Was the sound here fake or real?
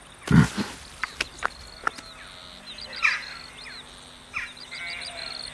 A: real